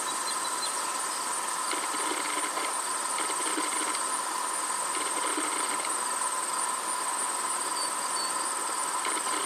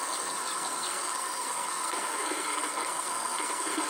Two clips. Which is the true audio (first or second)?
first